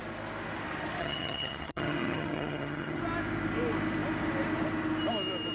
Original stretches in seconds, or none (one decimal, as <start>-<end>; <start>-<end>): 0.0-1.0; 3.0-5.5